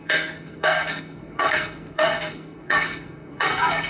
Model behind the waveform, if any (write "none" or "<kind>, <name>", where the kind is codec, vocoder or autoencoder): codec, SNAC